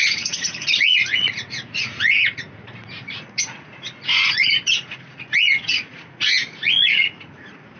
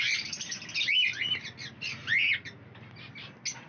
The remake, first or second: first